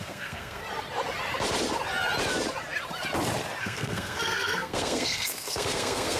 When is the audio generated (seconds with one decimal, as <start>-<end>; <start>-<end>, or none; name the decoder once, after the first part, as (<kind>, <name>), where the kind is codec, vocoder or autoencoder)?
0.0-0.6 (codec, SNAC); 3.6-6.2